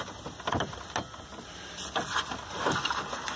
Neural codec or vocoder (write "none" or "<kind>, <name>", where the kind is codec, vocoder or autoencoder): none